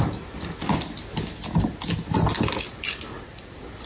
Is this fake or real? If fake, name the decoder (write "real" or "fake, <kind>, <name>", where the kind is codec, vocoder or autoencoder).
real